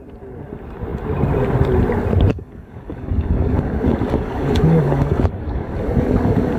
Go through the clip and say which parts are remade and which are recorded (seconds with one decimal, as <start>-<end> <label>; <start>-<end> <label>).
0.0-2.3 recorded; 2.3-6.6 remade